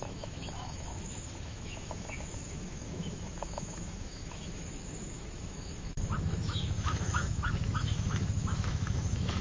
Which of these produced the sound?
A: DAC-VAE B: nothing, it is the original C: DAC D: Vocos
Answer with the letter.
A